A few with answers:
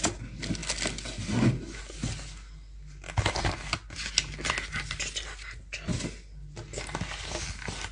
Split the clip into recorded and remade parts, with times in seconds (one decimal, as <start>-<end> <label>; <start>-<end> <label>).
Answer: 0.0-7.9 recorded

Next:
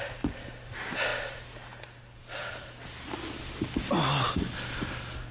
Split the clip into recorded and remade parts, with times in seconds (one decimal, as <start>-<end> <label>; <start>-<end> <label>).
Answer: 0.0-5.3 recorded

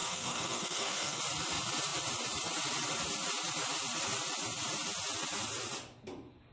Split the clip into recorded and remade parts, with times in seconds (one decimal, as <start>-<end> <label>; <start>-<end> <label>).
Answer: 0.0-1.2 remade; 1.2-6.5 recorded

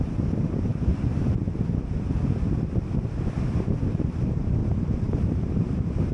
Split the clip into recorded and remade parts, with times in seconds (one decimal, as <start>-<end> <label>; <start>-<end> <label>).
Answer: 0.0-1.4 remade; 1.4-3.9 recorded; 3.9-4.6 remade; 4.6-5.1 recorded; 5.1-6.1 remade

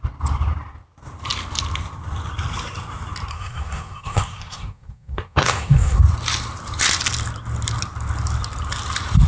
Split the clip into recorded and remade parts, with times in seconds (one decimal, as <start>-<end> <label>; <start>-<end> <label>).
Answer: 0.0-3.3 recorded; 3.3-6.0 remade; 6.0-9.3 recorded